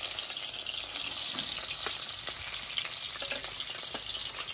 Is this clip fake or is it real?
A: real